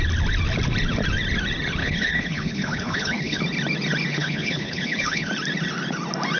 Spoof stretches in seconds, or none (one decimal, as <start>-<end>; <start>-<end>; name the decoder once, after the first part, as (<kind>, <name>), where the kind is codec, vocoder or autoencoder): 1.8-3.4 (codec, HILCodec); 4.1-5.3

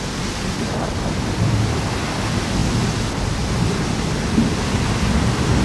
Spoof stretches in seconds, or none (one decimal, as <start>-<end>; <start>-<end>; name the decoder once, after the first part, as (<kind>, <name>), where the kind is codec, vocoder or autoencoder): none

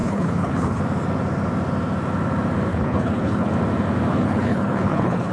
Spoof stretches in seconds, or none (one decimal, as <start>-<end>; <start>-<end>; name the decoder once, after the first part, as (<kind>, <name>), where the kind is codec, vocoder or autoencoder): 0.0-0.8 (codec, HILCodec); 2.7-3.5; 4.1-5.3

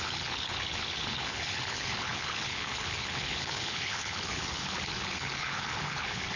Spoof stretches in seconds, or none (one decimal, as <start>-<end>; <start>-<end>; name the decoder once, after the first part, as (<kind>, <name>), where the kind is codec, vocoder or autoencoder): 0.0-6.4 (codec, HILCodec)

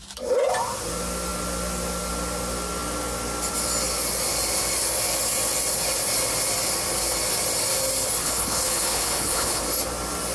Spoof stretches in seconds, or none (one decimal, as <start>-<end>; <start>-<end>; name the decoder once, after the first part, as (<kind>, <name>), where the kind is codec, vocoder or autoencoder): 8.2-9.6 (codec, HILCodec)